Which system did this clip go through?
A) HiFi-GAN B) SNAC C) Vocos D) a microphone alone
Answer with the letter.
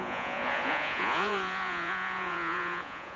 C